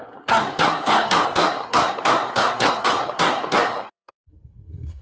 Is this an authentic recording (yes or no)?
no